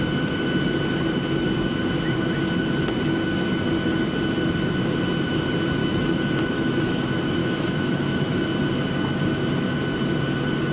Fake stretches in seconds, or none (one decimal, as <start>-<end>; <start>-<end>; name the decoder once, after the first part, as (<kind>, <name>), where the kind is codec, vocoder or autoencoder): 5.8-7.0 (autoencoder, DAC-VAE); 7.4-8.5